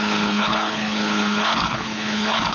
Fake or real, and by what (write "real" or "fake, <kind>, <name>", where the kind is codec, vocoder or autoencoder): fake, codec, HILCodec